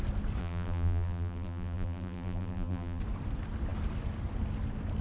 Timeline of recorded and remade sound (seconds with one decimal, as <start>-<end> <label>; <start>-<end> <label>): 0.0-0.4 recorded; 0.4-3.0 remade; 3.0-5.0 recorded